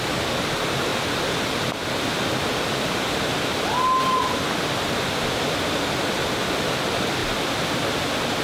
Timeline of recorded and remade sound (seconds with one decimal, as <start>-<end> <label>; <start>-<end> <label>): 0.0-8.4 recorded